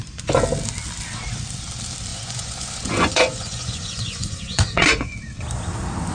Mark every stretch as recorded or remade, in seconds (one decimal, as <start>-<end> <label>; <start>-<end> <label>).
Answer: 0.0-2.1 recorded; 2.1-5.2 remade; 5.2-6.1 recorded